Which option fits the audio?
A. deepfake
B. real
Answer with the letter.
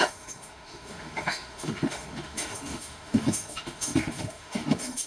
A